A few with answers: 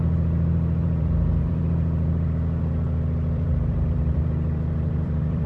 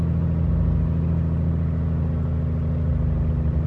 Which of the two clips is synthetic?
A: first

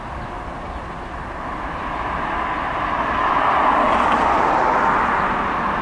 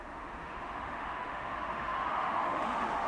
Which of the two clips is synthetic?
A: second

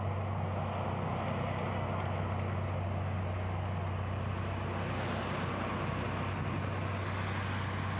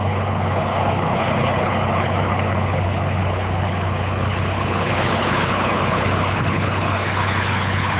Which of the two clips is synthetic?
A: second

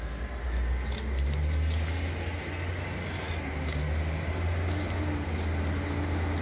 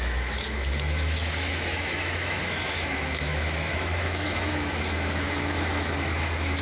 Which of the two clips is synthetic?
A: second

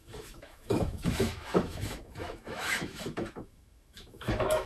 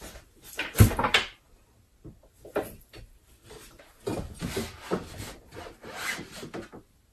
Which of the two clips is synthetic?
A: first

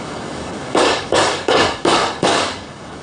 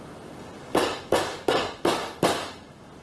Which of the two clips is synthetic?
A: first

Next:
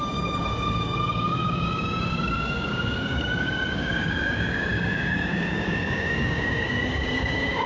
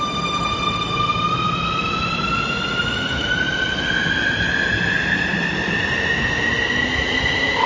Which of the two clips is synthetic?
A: first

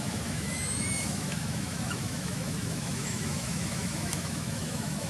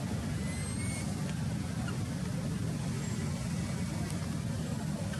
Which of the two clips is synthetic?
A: first